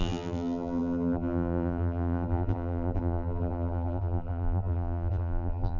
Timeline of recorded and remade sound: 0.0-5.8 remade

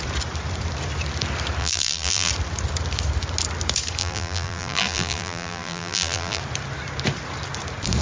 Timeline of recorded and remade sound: 0.0-1.6 recorded; 1.6-2.3 remade; 2.3-4.0 recorded; 4.0-6.4 remade; 6.4-8.0 recorded

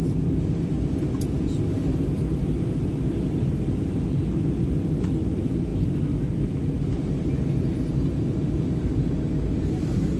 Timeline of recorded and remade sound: 0.0-10.2 recorded

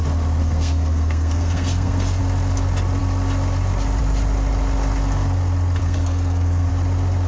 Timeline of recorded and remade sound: 0.0-0.4 recorded; 0.4-2.2 remade; 2.2-5.8 recorded; 5.8-6.7 remade; 6.7-7.3 recorded

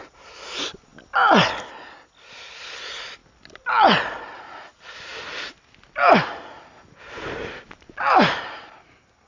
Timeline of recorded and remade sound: 0.0-0.9 remade; 0.9-2.8 recorded; 2.8-3.2 remade; 3.2-4.4 recorded; 4.4-5.1 remade; 5.1-6.9 recorded; 6.9-9.3 remade

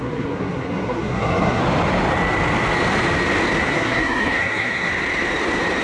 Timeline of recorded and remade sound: 0.0-1.6 remade; 1.6-3.6 recorded; 3.6-4.9 remade; 4.9-5.8 recorded

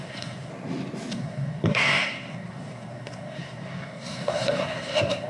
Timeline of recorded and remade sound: 0.0-0.5 remade; 0.5-1.1 recorded; 1.1-5.3 remade

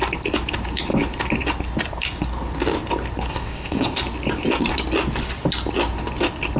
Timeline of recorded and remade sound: 0.0-3.3 recorded; 3.3-4.0 remade; 4.0-6.6 recorded